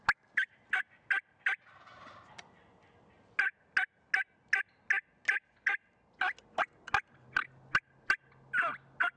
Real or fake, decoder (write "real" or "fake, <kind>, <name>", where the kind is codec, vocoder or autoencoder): real